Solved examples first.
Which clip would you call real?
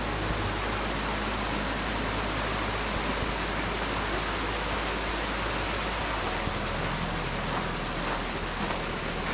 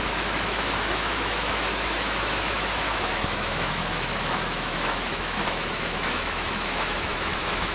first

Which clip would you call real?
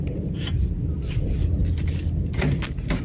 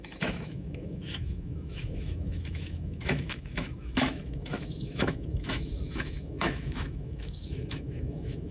first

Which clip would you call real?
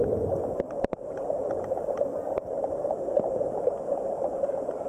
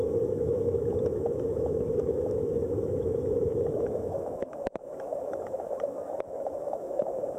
first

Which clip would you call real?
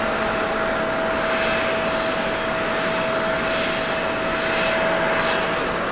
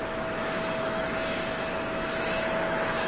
first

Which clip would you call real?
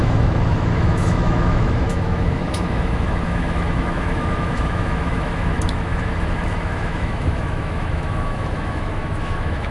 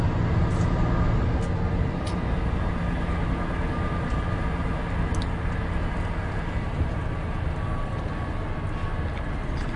second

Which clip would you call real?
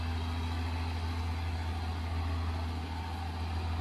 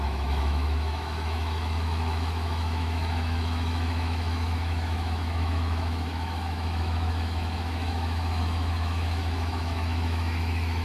first